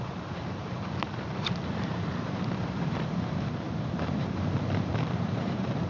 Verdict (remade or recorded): remade